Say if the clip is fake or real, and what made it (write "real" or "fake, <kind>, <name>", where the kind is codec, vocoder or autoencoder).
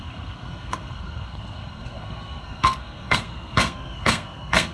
fake, codec, SNAC